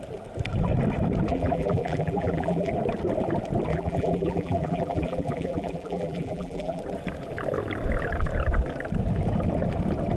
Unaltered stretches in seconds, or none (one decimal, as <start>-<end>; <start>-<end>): 0.0-1.3; 2.7-3.7; 6.8-10.2